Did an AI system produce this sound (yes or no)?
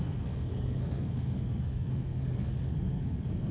yes